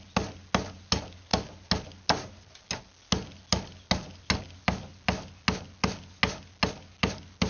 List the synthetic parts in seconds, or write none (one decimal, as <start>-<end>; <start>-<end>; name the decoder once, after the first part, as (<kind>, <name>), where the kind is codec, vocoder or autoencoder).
none